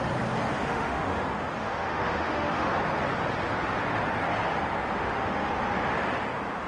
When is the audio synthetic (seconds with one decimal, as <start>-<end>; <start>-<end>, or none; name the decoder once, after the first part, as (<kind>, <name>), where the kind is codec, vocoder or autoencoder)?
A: 0.6-1.2 (autoencoder, DAC-VAE); 1.6-2.7; 4.9-5.5